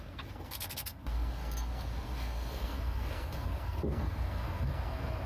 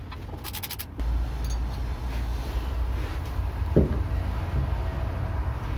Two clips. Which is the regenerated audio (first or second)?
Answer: first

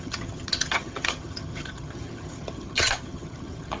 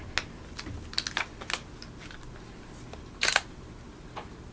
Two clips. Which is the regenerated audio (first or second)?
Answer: first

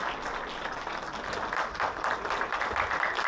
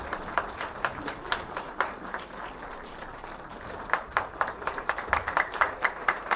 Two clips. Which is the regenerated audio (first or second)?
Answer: second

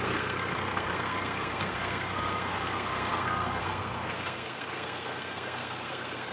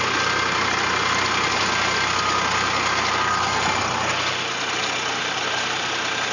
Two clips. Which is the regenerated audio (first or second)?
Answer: first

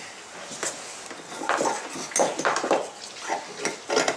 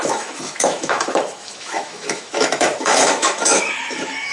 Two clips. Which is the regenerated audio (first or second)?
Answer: second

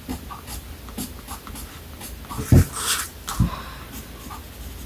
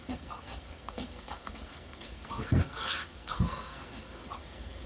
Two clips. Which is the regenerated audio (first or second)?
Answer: second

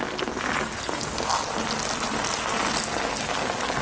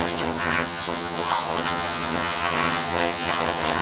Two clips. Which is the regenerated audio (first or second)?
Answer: second